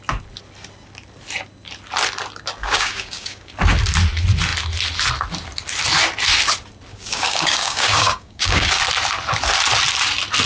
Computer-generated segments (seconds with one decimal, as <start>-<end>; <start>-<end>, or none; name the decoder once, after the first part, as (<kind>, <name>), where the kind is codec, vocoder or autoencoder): 2.6-3.5 (codec, DAC); 6.9-8.8